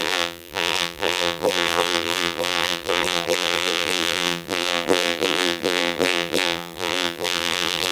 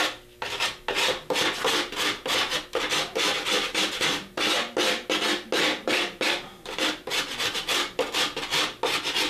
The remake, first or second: first